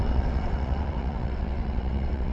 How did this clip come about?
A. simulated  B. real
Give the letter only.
A